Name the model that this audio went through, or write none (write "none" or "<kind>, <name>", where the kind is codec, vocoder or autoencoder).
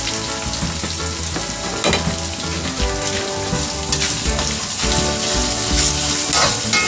none